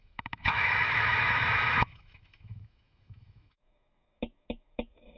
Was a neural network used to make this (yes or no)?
yes